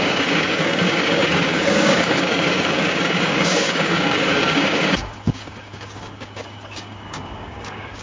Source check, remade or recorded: remade